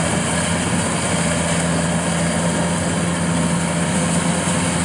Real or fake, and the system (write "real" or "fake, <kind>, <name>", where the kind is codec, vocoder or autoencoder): real